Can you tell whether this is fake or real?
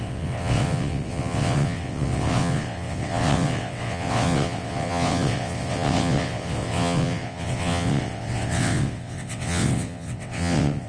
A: fake